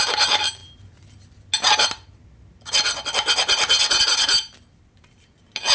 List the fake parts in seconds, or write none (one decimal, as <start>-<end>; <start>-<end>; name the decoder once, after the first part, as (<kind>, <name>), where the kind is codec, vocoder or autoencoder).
none